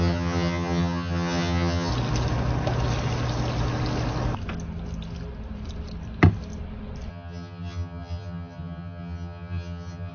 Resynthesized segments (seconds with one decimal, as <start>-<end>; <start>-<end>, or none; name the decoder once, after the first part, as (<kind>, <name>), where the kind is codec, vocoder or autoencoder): 0.0-1.9 (vocoder, HiFi-GAN); 7.1-10.1

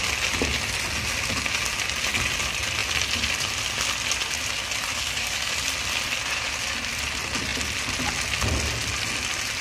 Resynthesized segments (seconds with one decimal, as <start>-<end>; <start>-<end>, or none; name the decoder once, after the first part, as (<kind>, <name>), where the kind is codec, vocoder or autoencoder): 4.9-5.5 (codec, DAC)

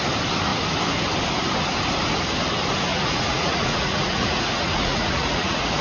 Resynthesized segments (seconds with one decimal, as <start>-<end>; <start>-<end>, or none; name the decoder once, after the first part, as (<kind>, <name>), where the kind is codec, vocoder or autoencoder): 2.9-5.8 (vocoder, Vocos)

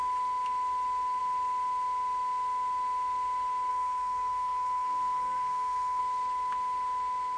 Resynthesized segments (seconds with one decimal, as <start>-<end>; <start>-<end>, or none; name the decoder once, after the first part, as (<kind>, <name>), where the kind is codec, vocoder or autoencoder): 3.7-6.0 (codec, SNAC)

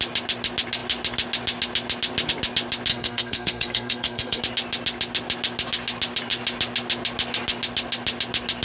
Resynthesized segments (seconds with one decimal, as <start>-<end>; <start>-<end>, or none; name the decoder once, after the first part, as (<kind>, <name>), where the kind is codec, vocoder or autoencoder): 2.9-4.4 (codec, SNAC)

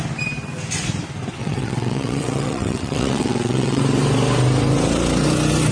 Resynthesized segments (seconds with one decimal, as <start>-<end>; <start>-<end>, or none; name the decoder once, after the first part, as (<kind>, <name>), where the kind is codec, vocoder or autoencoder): 1.4-3.8 (vocoder, WaveNeXt)

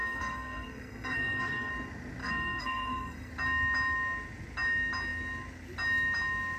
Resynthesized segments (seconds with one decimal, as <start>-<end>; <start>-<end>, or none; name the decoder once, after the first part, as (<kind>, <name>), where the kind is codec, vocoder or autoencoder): 0.0-1.7 (codec, SNAC); 2.2-3.3